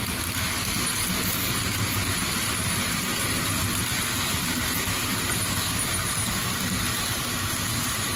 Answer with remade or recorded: recorded